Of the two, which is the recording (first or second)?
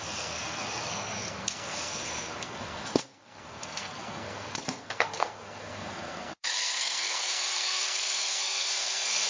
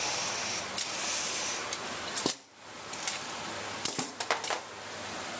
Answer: second